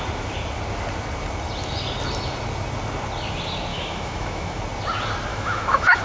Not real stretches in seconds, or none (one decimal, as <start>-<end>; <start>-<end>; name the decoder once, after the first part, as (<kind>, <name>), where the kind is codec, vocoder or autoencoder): 3.7-4.6 (autoencoder, DAC-VAE); 5.3-6.0